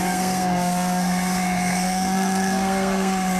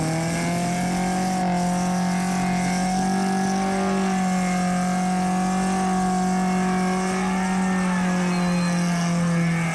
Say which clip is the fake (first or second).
first